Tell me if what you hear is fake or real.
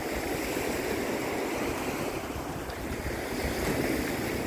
real